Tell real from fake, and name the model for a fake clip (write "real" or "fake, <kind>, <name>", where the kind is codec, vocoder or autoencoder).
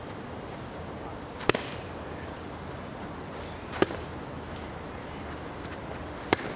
real